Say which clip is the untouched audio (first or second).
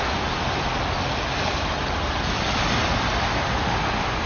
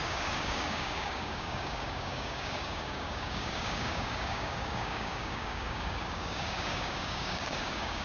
first